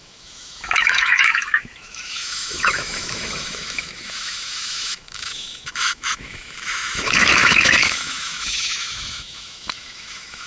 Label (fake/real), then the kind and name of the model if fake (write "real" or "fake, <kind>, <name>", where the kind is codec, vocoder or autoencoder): fake, autoencoder, DAC-VAE